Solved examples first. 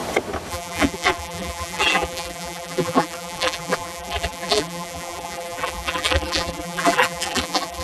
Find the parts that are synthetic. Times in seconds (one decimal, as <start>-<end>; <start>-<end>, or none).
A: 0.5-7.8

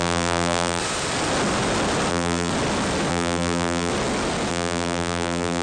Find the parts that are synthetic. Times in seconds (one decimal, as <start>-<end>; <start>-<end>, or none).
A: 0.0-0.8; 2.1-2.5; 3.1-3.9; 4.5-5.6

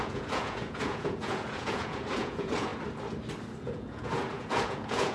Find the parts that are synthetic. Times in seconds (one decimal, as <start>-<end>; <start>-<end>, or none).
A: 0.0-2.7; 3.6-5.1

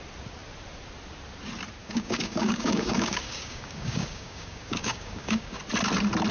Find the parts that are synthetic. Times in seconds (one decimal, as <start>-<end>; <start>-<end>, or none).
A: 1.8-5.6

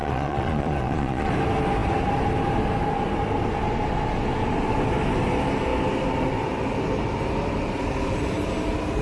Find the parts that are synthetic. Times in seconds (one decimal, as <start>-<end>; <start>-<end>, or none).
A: 0.0-1.3